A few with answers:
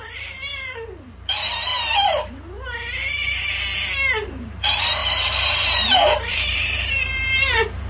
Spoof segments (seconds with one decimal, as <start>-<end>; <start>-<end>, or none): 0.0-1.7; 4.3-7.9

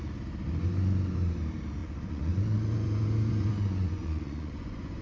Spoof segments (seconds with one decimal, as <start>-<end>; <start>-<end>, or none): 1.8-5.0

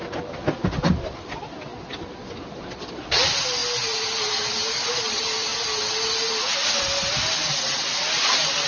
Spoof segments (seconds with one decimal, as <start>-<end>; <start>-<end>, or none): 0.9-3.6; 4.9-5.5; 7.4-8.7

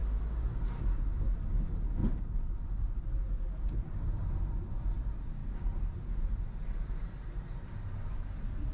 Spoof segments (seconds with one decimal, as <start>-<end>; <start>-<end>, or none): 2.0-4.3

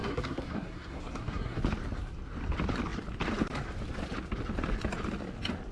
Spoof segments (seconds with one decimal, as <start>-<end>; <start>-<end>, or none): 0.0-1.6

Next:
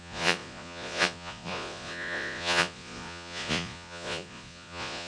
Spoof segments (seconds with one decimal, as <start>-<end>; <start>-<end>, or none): 0.0-5.1

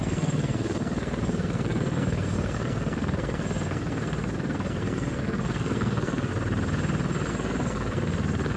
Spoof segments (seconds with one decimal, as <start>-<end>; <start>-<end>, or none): 0.0-6.3; 7.3-8.6